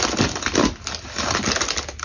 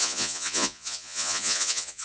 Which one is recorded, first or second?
first